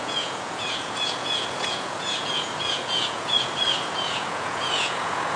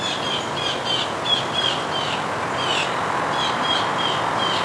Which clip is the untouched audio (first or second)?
second